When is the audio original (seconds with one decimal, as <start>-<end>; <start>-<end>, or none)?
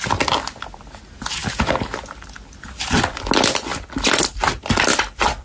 0.0-5.4